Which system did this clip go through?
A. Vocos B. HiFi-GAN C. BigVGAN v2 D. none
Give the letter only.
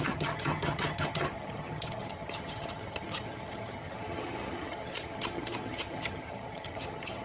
B